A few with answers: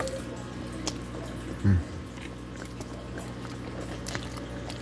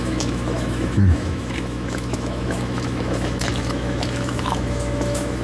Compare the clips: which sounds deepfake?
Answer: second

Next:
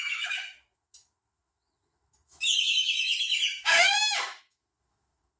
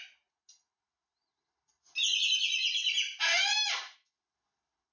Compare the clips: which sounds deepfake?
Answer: first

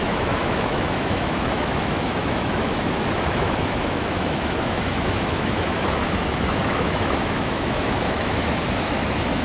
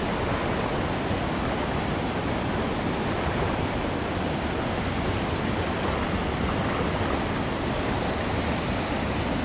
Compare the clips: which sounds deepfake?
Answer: first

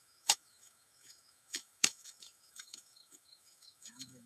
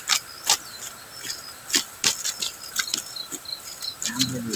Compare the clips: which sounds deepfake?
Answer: first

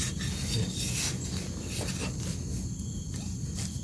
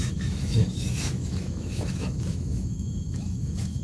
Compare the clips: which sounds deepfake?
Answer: second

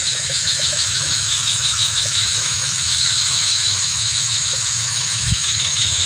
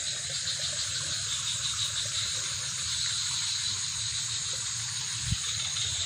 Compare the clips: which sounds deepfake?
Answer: first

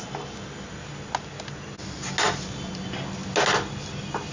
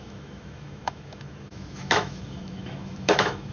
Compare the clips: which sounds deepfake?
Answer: second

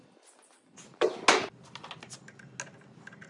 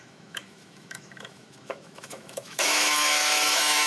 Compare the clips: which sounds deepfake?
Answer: second